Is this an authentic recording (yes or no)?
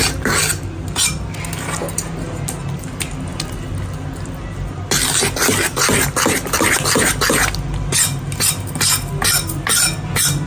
yes